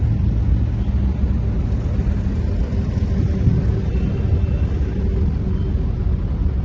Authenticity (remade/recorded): recorded